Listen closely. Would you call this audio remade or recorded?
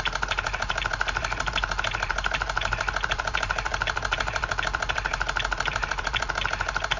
remade